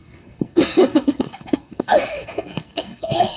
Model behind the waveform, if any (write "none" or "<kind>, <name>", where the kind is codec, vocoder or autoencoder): codec, SNAC